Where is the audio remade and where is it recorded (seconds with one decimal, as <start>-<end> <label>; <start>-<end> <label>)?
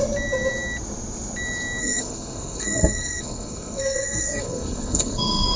0.0-1.8 recorded; 1.8-5.6 remade